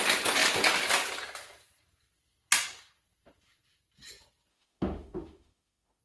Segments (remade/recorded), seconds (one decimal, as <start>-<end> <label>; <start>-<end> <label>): 0.0-4.5 recorded; 4.5-6.0 remade